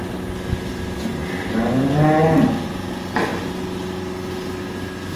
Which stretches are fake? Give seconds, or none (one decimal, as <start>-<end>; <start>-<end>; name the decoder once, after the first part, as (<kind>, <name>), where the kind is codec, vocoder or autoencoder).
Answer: none